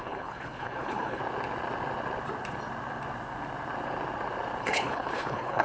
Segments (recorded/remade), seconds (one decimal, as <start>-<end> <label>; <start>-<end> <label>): 0.0-1.2 remade; 1.2-4.6 recorded; 4.6-5.6 remade